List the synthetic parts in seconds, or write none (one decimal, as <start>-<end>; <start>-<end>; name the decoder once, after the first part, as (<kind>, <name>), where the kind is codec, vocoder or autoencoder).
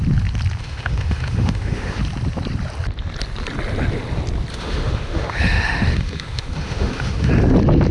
0.6-2.0 (autoencoder, DAC-VAE); 4.5-7.3